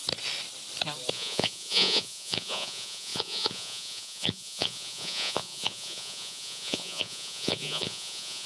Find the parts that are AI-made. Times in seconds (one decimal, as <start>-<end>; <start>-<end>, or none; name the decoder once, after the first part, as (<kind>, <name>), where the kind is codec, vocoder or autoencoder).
1.1-8.5 (vocoder, Vocos)